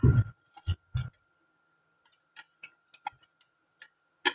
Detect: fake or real real